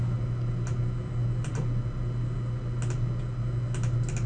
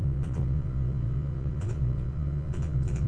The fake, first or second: second